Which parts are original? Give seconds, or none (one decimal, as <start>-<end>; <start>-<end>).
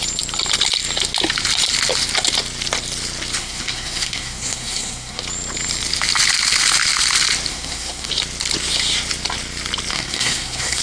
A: 0.0-3.4; 5.2-7.5; 8.1-9.9